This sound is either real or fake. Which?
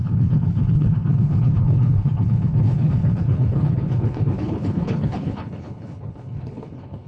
fake